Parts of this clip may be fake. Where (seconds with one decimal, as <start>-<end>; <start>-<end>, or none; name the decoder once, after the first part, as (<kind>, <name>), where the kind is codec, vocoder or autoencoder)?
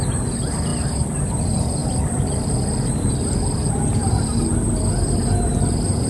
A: none